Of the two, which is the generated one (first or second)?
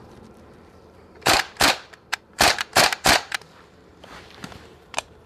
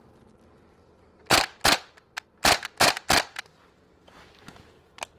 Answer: first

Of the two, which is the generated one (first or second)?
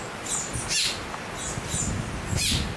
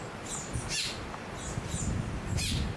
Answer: second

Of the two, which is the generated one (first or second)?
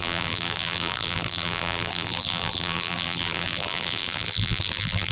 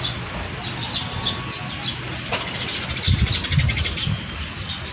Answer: first